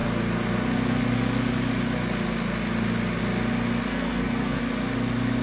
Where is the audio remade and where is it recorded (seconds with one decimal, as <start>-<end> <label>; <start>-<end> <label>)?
0.0-3.9 recorded; 3.9-4.6 remade; 4.6-5.4 recorded